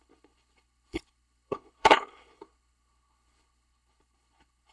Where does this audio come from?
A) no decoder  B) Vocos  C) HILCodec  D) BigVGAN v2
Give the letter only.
C